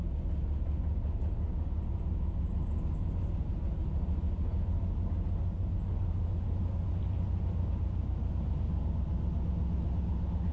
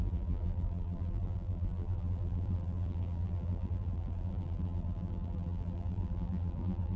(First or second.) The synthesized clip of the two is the second